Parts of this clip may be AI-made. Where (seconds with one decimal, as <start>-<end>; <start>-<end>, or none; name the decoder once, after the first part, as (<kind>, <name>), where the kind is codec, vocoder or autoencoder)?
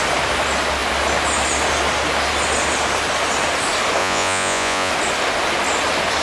4.0-4.9 (vocoder, Vocos)